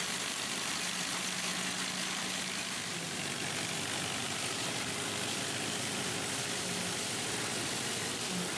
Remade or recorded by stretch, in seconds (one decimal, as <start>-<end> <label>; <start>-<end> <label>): 0.0-8.6 recorded